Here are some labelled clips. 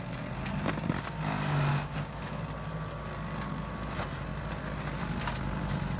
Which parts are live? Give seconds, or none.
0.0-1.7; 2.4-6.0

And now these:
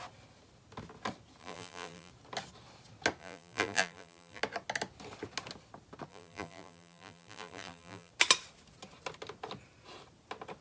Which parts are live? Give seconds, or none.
0.0-1.4; 2.1-3.2; 4.4-6.1; 8.1-10.6

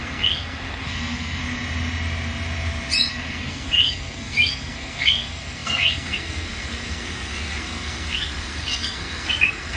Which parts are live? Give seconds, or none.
1.4-3.1

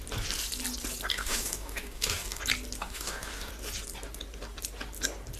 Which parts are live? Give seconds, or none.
0.0-1.1; 2.4-2.8; 3.5-5.4

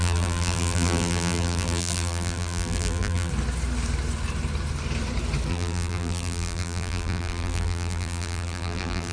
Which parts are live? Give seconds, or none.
3.3-5.5

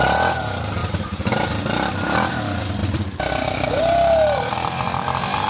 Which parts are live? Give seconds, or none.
0.0-0.8; 1.5-2.8; 3.8-5.5

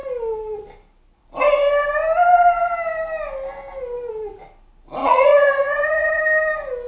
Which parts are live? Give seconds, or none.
0.0-5.0; 6.2-6.9